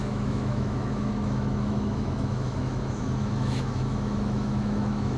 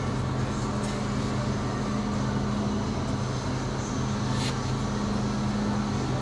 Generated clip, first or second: first